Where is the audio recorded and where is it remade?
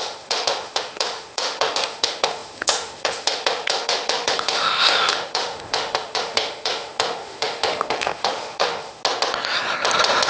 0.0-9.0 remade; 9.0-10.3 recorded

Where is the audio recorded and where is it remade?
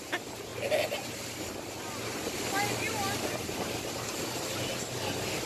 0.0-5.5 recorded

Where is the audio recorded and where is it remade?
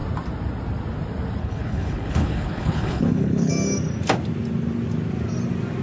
0.0-1.4 recorded; 1.4-3.5 remade; 3.5-5.8 recorded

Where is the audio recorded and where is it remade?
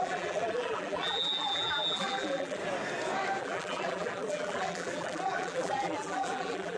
0.0-2.6 remade; 2.6-3.4 recorded; 3.4-6.8 remade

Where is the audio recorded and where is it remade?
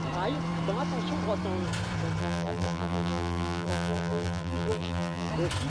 0.0-2.2 recorded; 2.2-5.3 remade; 5.3-5.7 recorded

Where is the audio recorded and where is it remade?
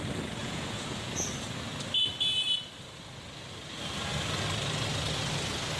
0.0-0.4 recorded; 0.4-1.1 remade; 1.1-5.8 recorded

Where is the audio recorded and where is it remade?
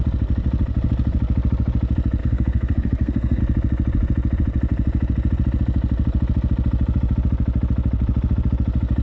0.0-2.2 recorded; 2.2-3.4 remade; 3.4-9.0 recorded